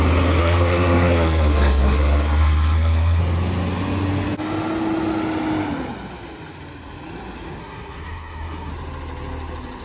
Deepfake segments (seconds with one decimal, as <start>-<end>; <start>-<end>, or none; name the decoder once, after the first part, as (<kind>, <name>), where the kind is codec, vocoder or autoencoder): 0.4-3.2 (codec, SNAC); 7.6-8.7